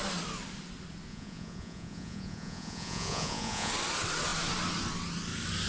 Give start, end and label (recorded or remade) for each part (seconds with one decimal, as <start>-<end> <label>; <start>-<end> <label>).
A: 0.0-1.1 recorded; 1.1-3.7 remade; 3.7-5.7 recorded

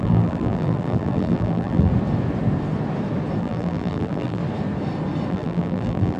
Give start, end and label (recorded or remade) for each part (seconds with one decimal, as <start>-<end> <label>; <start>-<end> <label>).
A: 0.0-1.9 remade; 1.9-3.4 recorded; 3.4-4.4 remade; 4.4-5.3 recorded; 5.3-6.2 remade

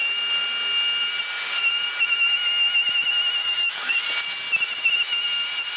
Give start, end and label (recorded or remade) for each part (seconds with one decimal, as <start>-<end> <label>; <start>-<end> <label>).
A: 0.0-3.4 recorded; 3.4-3.9 remade; 3.9-5.8 recorded